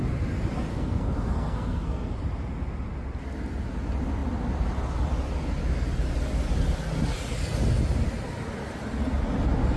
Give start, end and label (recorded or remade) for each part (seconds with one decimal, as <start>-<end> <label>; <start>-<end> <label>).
0.0-0.7 recorded; 0.7-2.1 remade; 2.1-9.8 recorded